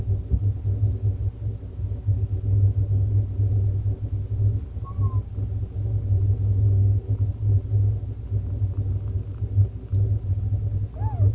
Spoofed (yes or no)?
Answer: no